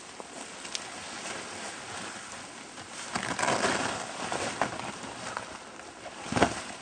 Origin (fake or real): real